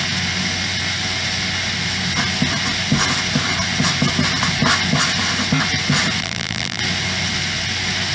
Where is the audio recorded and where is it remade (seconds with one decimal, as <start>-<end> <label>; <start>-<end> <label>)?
0.0-6.2 recorded; 6.2-6.8 remade; 6.8-8.1 recorded